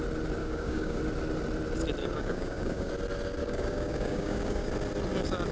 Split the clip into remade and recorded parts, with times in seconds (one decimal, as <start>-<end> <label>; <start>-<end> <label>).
0.0-0.4 recorded; 0.4-1.0 remade; 1.0-2.0 recorded; 2.0-2.9 remade; 2.9-3.4 recorded; 3.4-4.7 remade; 4.7-5.5 recorded